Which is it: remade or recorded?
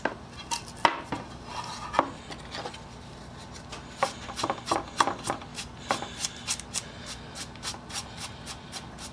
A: recorded